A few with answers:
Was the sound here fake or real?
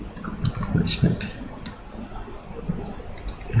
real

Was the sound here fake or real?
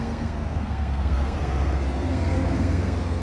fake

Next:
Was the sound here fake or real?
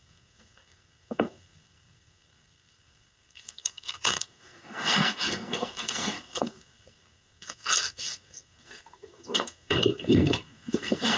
fake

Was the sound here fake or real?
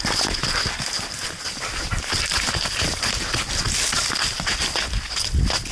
real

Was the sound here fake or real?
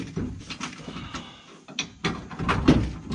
real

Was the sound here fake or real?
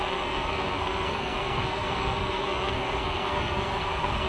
fake